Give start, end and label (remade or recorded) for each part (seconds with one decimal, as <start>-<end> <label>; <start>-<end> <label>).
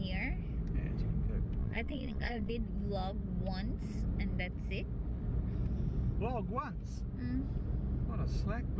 0.0-1.6 recorded; 1.6-2.5 remade; 2.5-8.8 recorded